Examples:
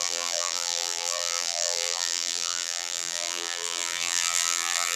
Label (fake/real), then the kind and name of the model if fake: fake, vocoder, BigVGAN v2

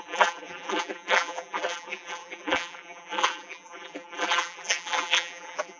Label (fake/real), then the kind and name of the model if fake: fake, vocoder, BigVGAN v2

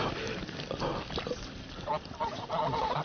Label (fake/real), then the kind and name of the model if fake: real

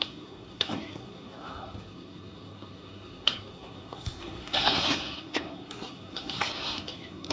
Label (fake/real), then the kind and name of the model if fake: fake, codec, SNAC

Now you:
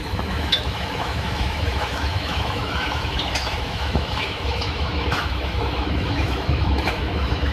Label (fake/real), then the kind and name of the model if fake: fake, autoencoder, DAC-VAE